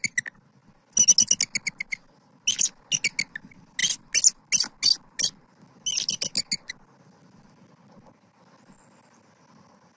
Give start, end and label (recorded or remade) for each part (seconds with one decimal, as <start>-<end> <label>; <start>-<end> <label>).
0.0-10.0 recorded